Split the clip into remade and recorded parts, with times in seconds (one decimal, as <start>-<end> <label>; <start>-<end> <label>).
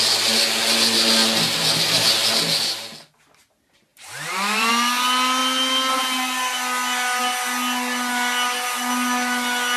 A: 0.0-3.9 recorded; 3.9-4.7 remade; 4.7-9.8 recorded